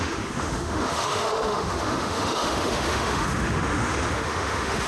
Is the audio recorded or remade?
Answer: remade